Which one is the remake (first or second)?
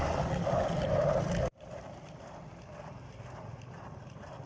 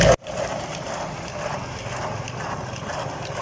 first